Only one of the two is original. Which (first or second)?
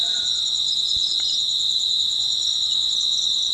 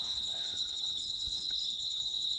first